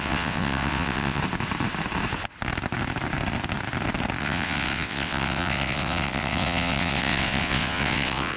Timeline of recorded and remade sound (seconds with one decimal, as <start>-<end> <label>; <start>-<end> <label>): 0.0-1.2 remade; 1.2-4.2 recorded; 4.2-8.4 remade